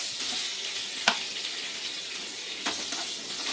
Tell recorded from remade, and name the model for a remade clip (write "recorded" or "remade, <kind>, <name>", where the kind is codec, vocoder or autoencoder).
recorded